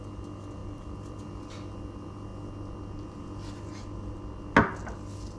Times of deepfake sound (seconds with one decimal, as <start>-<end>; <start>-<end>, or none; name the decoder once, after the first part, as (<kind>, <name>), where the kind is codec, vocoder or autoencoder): 0.6-1.2 (vocoder, BigVGAN v2)